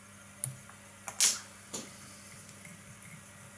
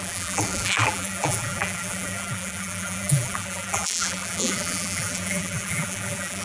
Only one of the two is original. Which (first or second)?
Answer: first